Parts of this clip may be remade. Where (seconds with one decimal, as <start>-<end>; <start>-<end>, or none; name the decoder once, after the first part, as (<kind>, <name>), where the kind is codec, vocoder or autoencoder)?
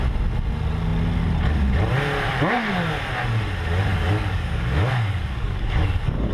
3.9-6.3 (codec, DAC)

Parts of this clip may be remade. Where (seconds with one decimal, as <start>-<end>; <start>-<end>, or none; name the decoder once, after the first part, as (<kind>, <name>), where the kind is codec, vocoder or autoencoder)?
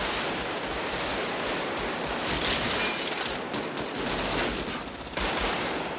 none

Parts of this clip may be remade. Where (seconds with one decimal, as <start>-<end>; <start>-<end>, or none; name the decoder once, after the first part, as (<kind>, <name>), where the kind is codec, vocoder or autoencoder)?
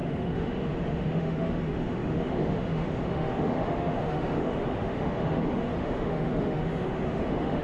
0.0-7.6 (autoencoder, DAC-VAE)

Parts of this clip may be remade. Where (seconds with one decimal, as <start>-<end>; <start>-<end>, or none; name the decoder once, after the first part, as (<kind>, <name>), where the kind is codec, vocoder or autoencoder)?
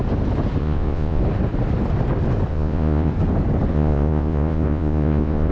0.6-1.2 (vocoder, Vocos); 2.5-3.1; 3.7-5.5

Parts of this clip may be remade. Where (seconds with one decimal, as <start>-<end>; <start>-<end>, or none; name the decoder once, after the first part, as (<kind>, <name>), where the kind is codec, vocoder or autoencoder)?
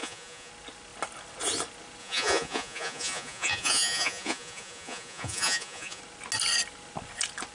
0.0-0.5 (vocoder, Vocos); 2.0-6.0